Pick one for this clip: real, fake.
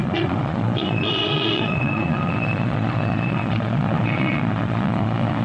fake